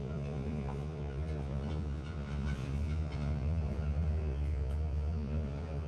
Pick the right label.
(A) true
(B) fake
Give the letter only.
B